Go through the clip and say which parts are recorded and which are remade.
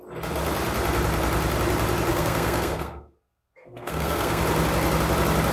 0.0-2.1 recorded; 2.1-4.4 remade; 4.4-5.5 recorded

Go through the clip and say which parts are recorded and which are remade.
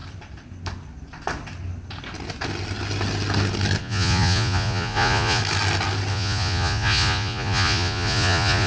0.0-3.8 recorded; 3.8-5.4 remade; 5.4-6.1 recorded; 6.1-8.7 remade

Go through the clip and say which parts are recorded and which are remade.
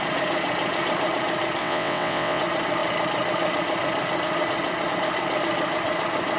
0.0-1.6 recorded; 1.6-2.4 remade; 2.4-6.4 recorded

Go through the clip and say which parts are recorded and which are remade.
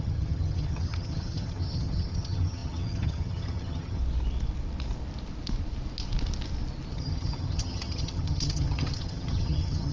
0.0-4.0 remade; 4.0-6.9 recorded; 6.9-9.9 remade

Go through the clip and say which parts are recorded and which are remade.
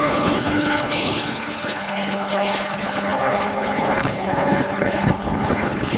0.0-6.0 remade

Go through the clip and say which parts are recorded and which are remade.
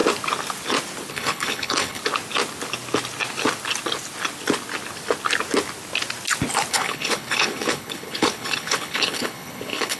0.0-1.1 recorded; 1.1-2.0 remade; 2.0-6.7 recorded; 6.7-10.0 remade